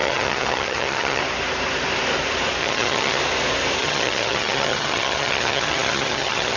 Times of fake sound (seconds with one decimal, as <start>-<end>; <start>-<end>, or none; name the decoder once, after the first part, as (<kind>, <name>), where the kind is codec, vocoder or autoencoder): 0.0-1.2 (vocoder, HiFi-GAN); 2.6-3.2; 3.8-6.6